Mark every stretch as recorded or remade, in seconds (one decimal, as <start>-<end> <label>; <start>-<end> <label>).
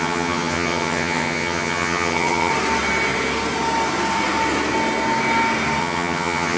0.0-2.5 remade; 2.5-5.8 recorded; 5.8-6.6 remade